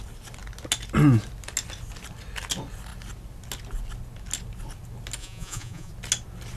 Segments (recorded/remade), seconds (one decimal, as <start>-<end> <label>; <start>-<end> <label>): 0.0-5.2 recorded; 5.2-5.9 remade; 5.9-6.6 recorded